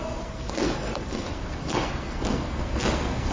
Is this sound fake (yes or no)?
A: yes